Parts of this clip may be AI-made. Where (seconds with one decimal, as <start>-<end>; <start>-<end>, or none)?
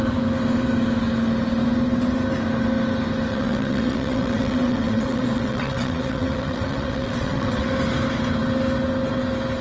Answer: 3.3-7.7